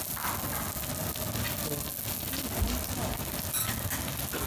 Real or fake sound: real